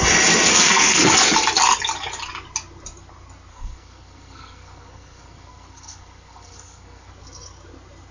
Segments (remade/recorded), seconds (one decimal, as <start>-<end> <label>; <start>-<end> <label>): 0.0-0.5 recorded; 0.5-1.1 remade; 1.1-3.5 recorded; 3.5-7.1 remade; 7.1-8.1 recorded